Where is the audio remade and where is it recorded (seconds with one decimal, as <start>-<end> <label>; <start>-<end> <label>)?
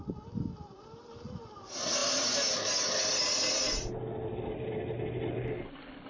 0.0-6.1 recorded